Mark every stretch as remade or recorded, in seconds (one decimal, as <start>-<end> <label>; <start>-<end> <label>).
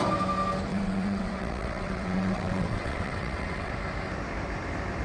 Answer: 0.0-0.7 recorded; 0.7-3.7 remade; 3.7-5.0 recorded